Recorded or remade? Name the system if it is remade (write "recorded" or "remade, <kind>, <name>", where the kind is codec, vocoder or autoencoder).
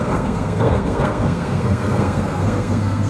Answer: remade, codec, SNAC